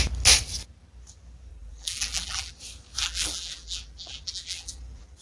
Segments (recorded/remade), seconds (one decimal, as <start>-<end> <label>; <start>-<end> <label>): 0.0-1.5 recorded; 1.5-2.5 remade; 2.5-3.0 recorded; 3.0-5.2 remade

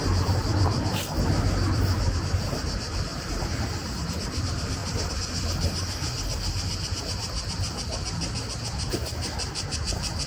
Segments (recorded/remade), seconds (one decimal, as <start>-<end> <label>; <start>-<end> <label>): 0.0-3.1 remade; 3.1-4.1 recorded; 4.1-4.8 remade; 4.8-8.9 recorded; 8.9-10.3 remade

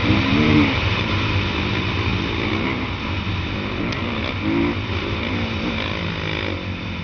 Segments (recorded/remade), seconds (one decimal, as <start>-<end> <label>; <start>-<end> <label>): 0.0-1.1 remade; 1.1-7.0 recorded